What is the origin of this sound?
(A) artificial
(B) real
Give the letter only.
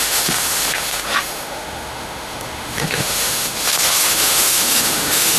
A